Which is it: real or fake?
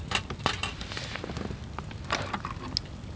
real